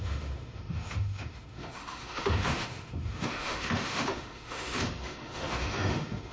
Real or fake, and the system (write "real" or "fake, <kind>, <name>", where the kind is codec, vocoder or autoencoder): fake, autoencoder, DAC-VAE